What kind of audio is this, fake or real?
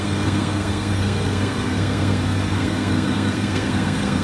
fake